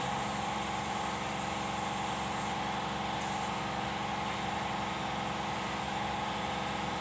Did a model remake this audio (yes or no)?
no